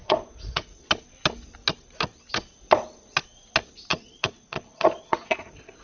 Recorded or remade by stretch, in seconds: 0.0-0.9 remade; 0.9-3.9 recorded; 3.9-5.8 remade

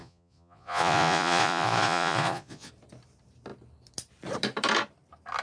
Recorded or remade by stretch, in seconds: 0.0-2.7 remade; 2.7-5.4 recorded

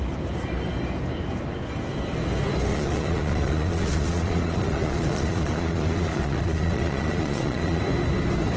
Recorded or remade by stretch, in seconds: 0.0-2.7 recorded; 2.7-7.8 remade; 7.8-8.6 recorded

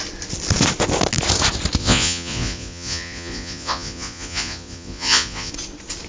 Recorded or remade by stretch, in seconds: 0.0-1.8 recorded; 1.8-5.5 remade; 5.5-6.1 recorded